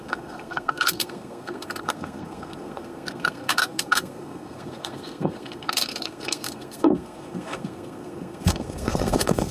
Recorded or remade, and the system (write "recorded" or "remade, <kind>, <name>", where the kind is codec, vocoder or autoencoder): remade, codec, SNAC